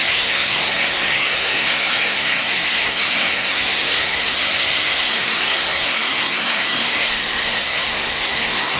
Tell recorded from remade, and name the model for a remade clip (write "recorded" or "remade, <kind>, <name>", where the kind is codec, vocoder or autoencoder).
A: remade, codec, SNAC